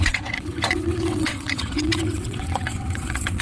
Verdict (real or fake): fake